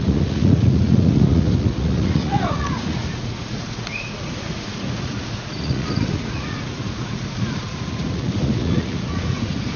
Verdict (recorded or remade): remade